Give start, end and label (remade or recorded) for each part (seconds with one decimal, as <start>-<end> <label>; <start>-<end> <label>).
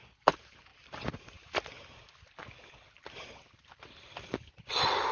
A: 0.0-5.1 recorded